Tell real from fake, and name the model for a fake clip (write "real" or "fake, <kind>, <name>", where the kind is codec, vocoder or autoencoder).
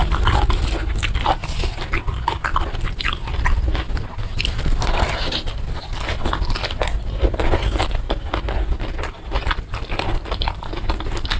real